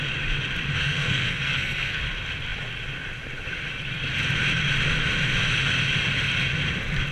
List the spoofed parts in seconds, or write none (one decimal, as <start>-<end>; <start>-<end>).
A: 0.8-2.0